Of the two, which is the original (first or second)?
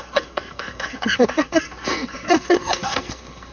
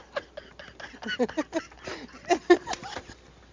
second